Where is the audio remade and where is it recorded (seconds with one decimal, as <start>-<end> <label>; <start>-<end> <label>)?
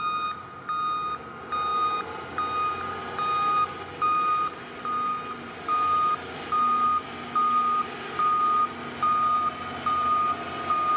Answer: 0.0-11.0 recorded